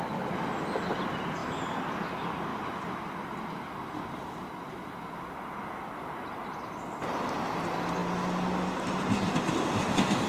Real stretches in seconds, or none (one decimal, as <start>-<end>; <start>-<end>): 0.0-10.3